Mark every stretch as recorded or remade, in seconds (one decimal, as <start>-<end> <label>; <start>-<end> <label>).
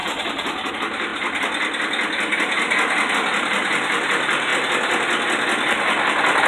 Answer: 0.0-1.1 remade; 1.1-3.1 recorded; 3.1-4.5 remade; 4.5-6.5 recorded